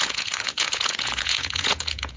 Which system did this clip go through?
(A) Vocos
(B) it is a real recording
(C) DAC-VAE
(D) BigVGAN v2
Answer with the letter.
A